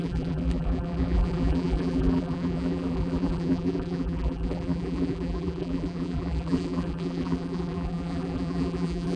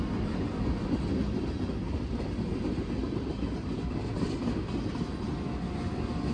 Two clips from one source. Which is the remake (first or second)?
first